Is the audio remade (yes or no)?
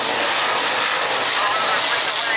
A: no